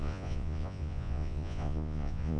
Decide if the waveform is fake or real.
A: fake